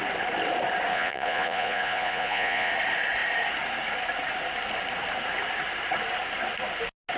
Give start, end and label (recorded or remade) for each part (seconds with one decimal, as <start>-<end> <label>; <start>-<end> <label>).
0.0-0.9 recorded; 0.9-2.7 remade; 2.7-7.2 recorded